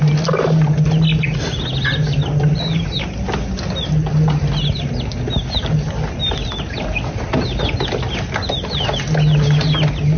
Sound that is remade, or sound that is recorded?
recorded